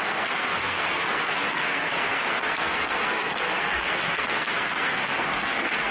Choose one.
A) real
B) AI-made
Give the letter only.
B